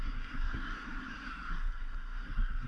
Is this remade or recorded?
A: remade